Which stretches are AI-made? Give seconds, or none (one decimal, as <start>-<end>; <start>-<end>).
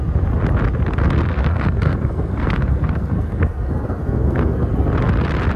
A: 1.3-4.7